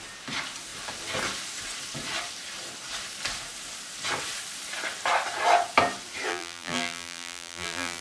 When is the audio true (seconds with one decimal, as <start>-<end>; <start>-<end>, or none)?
0.0-6.3